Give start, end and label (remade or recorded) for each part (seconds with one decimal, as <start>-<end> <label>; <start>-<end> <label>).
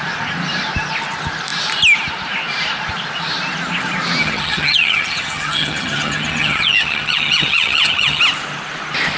0.0-4.2 recorded; 4.2-8.2 remade; 8.2-9.2 recorded